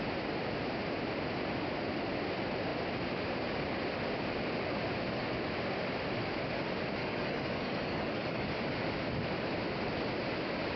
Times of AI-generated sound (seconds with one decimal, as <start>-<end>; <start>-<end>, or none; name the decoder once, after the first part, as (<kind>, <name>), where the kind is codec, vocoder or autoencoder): 7.0-8.5 (codec, DAC)